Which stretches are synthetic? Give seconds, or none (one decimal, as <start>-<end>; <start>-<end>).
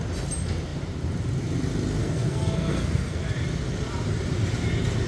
2.0-3.2